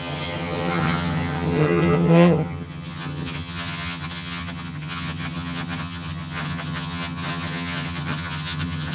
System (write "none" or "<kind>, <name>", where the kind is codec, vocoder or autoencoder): vocoder, HiFi-GAN